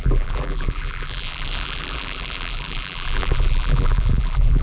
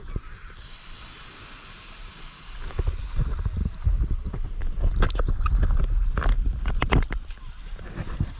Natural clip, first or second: second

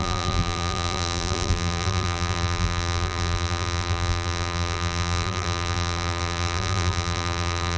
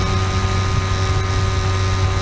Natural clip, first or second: second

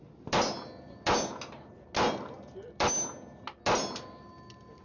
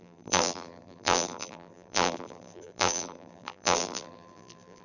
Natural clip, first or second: first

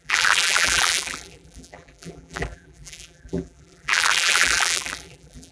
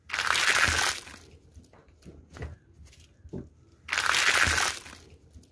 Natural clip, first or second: second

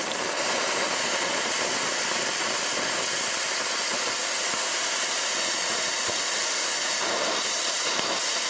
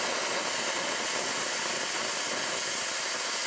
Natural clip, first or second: second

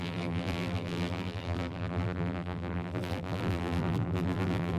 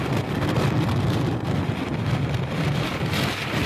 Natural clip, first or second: second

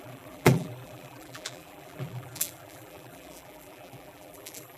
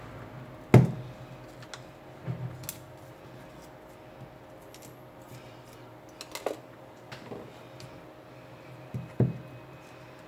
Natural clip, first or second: second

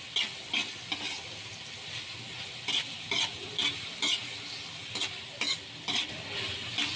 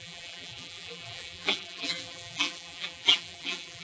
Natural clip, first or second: first